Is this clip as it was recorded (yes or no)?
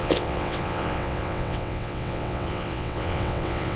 no